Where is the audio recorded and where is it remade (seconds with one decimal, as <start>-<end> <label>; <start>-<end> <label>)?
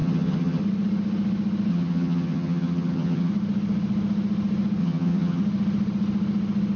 0.0-0.6 remade; 0.6-1.7 recorded; 1.7-3.3 remade; 3.3-4.8 recorded; 4.8-5.4 remade; 5.4-6.8 recorded